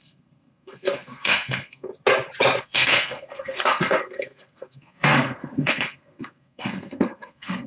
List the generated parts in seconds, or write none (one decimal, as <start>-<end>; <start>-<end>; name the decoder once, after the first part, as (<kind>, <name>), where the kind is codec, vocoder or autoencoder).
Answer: 0.0-1.9 (codec, SNAC); 2.6-7.7